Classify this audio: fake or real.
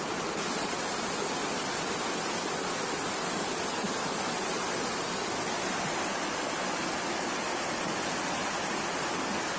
real